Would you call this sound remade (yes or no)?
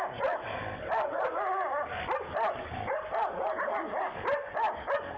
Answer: no